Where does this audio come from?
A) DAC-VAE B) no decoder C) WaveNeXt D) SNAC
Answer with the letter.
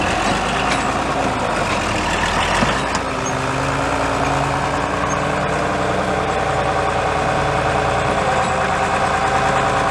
B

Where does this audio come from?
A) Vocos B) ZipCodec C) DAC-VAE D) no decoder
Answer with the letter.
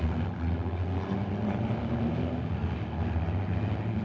D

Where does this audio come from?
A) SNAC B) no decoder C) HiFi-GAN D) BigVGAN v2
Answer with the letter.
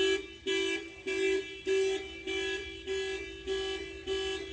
B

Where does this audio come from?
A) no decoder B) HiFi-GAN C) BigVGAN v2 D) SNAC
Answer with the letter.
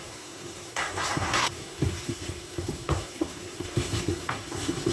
D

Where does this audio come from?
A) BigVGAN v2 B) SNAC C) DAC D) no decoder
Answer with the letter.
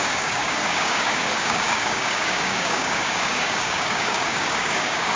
C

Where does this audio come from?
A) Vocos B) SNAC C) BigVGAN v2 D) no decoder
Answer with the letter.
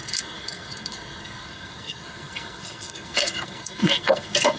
B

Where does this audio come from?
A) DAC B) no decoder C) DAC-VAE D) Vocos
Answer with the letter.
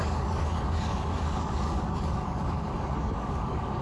A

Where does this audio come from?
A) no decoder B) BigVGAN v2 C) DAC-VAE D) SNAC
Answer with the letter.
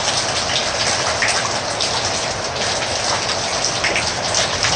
A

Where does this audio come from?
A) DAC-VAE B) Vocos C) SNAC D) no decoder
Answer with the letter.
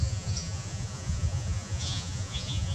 B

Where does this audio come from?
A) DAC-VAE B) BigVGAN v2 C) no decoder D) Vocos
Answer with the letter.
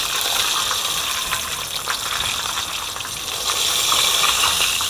C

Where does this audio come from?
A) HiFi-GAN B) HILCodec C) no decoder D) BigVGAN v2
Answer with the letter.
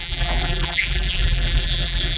D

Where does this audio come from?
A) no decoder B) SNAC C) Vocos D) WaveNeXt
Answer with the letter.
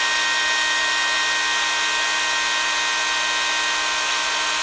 A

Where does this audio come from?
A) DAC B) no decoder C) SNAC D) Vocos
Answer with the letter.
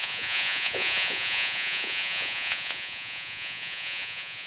D